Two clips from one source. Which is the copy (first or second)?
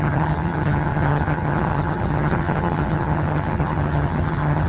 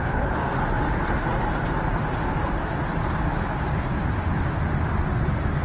first